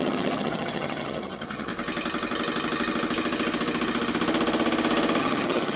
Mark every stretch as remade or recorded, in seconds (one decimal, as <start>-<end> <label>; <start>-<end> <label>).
0.0-1.7 remade; 1.7-5.2 recorded; 5.2-5.8 remade